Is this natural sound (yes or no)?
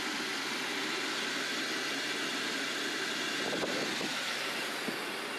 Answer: yes